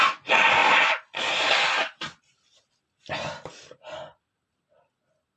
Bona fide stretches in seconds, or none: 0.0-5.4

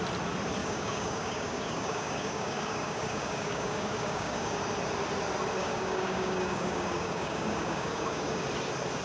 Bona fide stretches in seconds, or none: 0.0-0.6; 4.6-5.6; 8.4-9.0

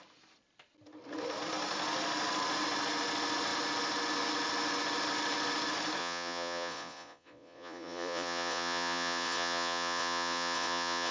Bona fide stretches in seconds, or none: 0.0-6.0

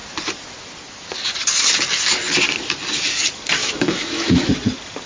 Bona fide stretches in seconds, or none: 0.0-3.6; 4.5-5.1

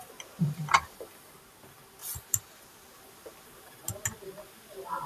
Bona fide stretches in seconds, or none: 0.0-0.4; 1.3-2.0; 2.6-5.1

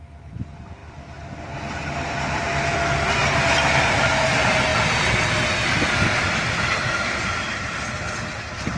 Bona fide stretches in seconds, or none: 0.0-8.8